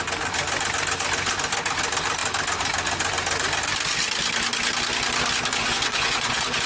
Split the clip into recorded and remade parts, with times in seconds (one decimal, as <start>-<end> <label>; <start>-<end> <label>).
0.0-5.5 recorded; 5.5-6.7 remade